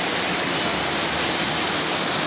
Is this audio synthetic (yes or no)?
no